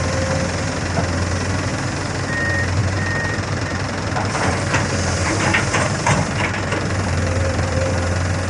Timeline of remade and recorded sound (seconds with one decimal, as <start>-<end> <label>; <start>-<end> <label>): 0.0-1.7 recorded; 1.7-2.4 remade; 2.4-2.8 recorded; 2.8-7.9 remade; 7.9-8.5 recorded